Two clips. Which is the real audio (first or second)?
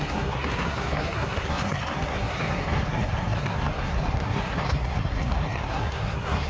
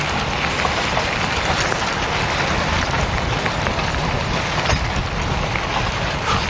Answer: second